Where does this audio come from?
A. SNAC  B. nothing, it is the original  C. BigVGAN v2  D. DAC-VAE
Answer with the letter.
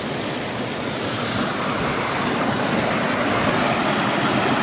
B